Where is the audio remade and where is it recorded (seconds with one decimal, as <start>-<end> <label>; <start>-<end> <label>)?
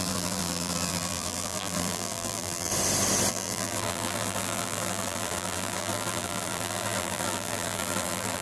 0.0-2.7 remade; 2.7-3.3 recorded; 3.3-8.4 remade